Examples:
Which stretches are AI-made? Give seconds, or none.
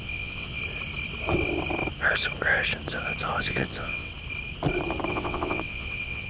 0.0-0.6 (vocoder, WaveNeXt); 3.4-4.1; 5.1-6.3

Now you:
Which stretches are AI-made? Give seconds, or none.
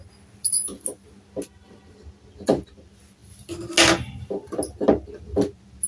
none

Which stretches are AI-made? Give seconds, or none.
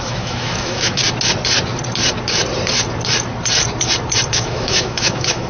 0.0-1.0 (autoencoder, DAC-VAE); 4.3-5.5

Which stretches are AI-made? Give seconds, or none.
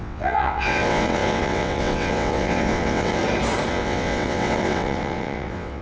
0.0-3.2 (vocoder, WaveNeXt); 3.7-5.8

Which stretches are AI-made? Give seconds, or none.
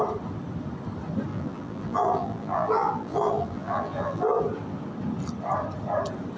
1.3-4.4 (vocoder, BigVGAN v2)